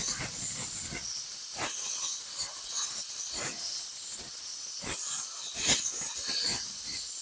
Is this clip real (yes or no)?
yes